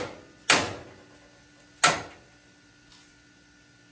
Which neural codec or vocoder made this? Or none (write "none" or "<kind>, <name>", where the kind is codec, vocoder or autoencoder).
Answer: none